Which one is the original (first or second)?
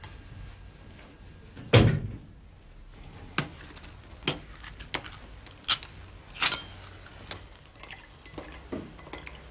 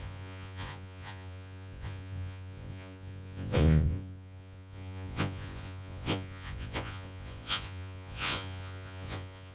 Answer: first